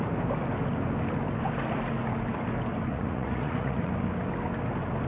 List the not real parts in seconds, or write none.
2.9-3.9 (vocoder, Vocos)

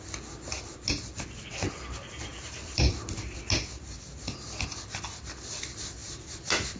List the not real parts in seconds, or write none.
2.3-3.4 (vocoder, BigVGAN v2); 6.0-6.8

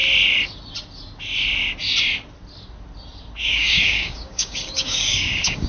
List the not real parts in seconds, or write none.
3.4-5.7 (codec, DAC)

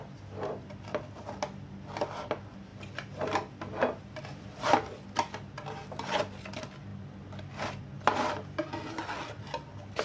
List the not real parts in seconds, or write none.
none

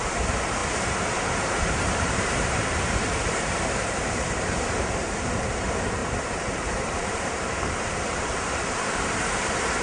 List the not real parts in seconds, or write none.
0.0-9.8 (vocoder, BigVGAN v2)

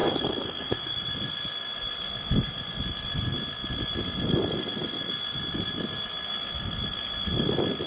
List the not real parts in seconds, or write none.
0.0-1.0 (codec, DAC)